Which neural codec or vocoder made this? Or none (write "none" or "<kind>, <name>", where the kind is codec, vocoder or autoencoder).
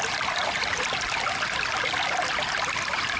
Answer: vocoder, BigVGAN v2